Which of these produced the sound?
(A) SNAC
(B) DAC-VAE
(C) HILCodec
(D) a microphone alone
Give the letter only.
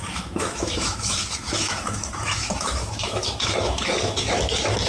B